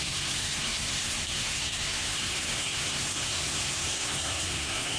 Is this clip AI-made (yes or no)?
yes